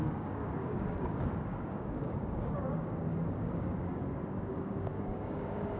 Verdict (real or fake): fake